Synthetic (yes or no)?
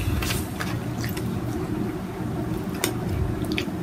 no